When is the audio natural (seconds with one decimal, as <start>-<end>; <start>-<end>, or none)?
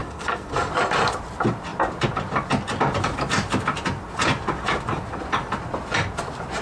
0.7-6.6